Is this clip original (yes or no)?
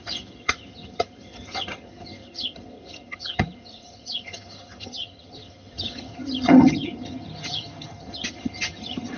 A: no